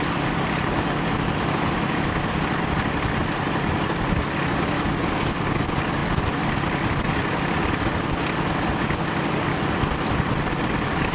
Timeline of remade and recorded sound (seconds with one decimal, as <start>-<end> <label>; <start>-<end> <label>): 0.0-11.1 recorded

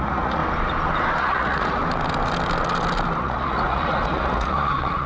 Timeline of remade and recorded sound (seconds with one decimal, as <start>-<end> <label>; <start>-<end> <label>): 0.0-0.4 remade; 0.4-1.2 recorded; 1.2-1.8 remade; 1.8-3.2 recorded; 3.2-5.1 remade

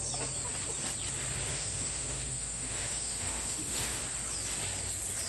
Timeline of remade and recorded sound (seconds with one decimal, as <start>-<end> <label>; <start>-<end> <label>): 0.0-1.5 recorded; 1.5-4.0 remade; 4.0-5.3 recorded

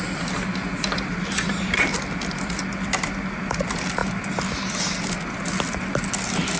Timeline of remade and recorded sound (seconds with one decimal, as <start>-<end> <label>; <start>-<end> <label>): 0.0-1.5 recorded; 1.5-2.6 remade; 2.6-6.6 recorded